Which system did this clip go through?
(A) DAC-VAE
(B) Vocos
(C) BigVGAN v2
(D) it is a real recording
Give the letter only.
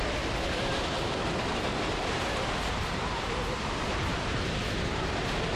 C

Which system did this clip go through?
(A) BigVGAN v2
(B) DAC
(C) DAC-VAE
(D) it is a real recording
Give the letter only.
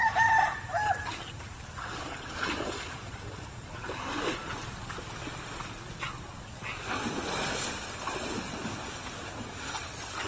D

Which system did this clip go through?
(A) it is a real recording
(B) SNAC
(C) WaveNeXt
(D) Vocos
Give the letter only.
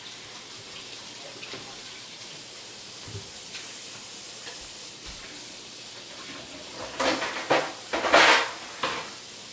A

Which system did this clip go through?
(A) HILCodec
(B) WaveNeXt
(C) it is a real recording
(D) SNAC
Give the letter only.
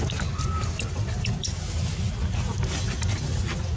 C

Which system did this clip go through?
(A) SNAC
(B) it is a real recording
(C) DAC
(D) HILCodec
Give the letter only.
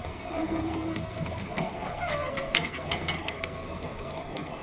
A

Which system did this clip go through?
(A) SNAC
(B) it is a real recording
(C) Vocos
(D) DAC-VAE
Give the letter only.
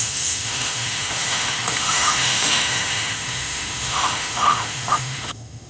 D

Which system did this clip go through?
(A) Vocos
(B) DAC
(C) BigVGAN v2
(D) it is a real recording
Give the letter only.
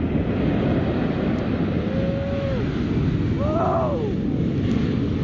D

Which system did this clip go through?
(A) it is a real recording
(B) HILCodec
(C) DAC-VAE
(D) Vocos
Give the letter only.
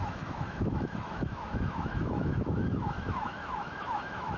C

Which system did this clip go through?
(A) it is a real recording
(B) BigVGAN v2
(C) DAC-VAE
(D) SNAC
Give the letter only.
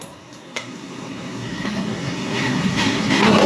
D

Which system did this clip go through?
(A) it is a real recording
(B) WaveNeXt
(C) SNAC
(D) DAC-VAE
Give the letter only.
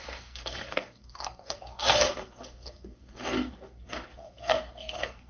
C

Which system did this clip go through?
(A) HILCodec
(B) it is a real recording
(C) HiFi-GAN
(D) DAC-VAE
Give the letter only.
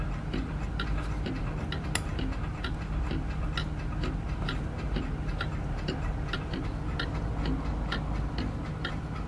B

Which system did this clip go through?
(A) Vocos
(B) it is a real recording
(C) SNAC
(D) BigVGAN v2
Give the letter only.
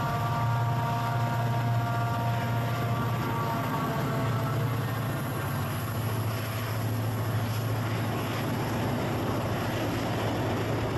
B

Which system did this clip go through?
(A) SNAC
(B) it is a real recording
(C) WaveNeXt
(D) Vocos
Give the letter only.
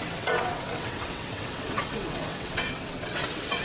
C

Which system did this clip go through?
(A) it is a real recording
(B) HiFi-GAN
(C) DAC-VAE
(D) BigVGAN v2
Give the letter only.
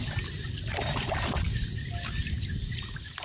A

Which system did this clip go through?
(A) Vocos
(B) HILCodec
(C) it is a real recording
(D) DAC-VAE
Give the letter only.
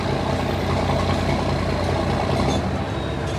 C